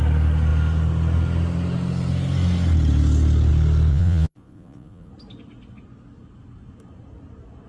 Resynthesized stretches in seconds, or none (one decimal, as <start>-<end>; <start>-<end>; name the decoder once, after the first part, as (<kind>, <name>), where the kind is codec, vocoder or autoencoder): 3.9-5.1 (vocoder, Vocos)